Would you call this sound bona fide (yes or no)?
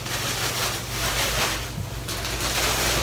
yes